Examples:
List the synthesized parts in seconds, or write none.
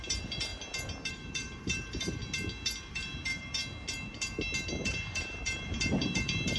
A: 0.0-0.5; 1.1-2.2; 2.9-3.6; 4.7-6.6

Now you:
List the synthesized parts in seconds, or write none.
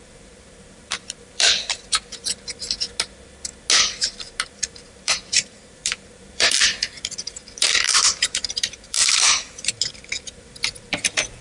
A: 0.0-2.6; 4.5-11.4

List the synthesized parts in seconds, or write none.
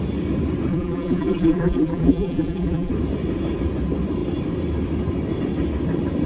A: 0.7-2.9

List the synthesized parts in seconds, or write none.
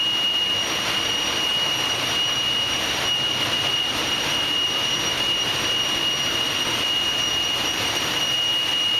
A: 1.5-5.7; 7.6-8.1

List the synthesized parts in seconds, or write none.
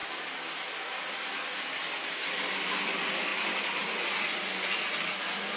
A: none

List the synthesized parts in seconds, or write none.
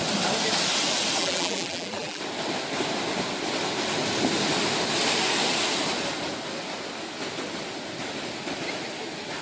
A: 1.2-2.2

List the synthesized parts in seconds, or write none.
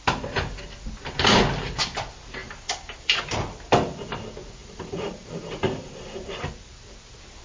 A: 2.4-3.2; 4.6-6.5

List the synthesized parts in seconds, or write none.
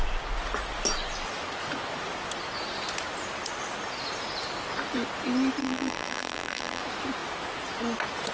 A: 5.6-6.8